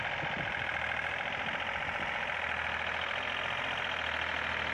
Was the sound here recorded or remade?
recorded